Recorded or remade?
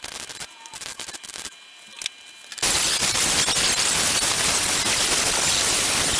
recorded